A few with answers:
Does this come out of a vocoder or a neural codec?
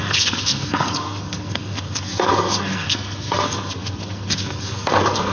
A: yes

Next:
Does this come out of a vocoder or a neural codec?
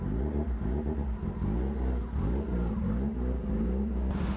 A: no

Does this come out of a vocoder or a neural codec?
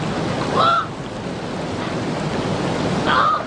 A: no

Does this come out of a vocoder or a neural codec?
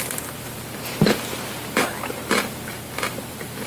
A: yes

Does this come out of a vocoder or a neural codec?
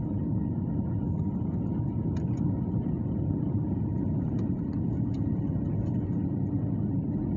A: no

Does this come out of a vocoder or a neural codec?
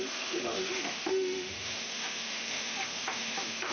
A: yes